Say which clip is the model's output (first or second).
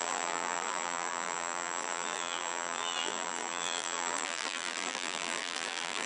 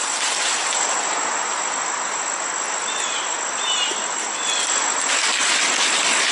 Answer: first